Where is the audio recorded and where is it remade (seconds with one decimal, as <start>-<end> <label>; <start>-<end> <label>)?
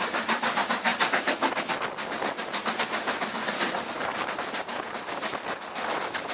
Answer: 0.0-0.9 remade; 0.9-3.5 recorded; 3.5-6.3 remade